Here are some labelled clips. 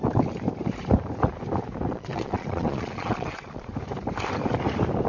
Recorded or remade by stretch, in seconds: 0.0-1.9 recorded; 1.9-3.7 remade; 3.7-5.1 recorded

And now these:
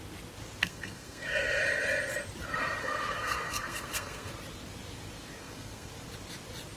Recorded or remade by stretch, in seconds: 0.0-0.6 recorded; 0.6-1.6 remade; 1.6-2.8 recorded; 2.8-4.3 remade; 4.3-5.4 recorded; 5.4-5.9 remade; 5.9-6.8 recorded

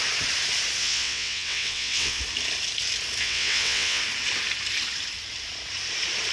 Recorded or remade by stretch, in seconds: 0.0-0.8 recorded; 0.8-2.2 remade; 2.2-3.2 recorded; 3.2-4.0 remade; 4.0-6.3 recorded

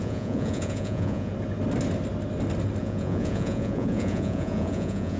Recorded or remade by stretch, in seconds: 0.0-1.3 remade; 1.3-2.8 recorded; 2.8-5.2 remade